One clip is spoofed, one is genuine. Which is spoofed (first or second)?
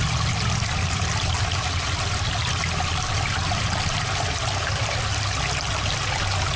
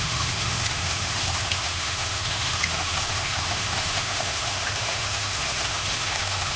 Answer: second